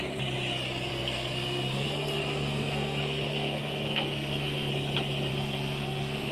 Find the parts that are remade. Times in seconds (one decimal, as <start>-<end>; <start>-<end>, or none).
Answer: 0.9-4.7; 5.3-6.3